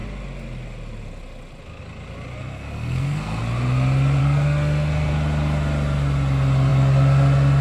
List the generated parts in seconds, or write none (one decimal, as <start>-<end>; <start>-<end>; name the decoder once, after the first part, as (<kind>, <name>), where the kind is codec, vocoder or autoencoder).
2.4-3.4 (codec, SNAC); 4.2-5.1